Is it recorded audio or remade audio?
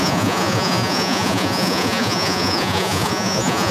remade